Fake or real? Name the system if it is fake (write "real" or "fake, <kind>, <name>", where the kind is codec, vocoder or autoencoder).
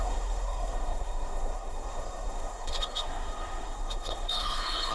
fake, codec, SNAC